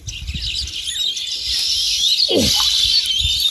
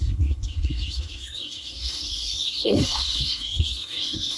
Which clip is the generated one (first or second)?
second